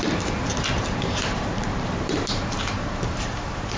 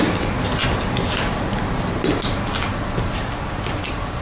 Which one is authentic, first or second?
second